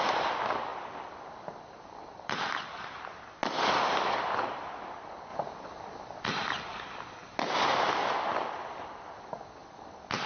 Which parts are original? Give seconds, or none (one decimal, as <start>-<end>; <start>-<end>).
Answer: 0.0-10.3